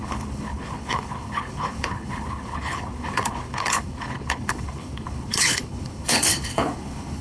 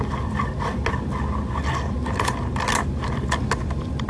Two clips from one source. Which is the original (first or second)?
second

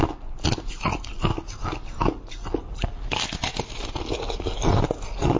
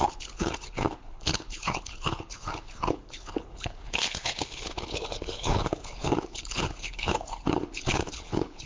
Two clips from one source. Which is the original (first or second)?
first